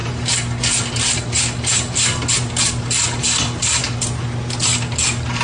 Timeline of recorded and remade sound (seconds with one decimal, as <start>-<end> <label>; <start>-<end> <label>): 0.0-5.4 recorded